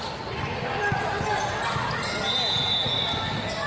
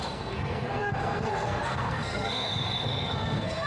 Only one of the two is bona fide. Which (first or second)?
first